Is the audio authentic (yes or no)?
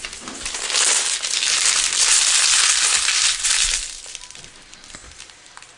yes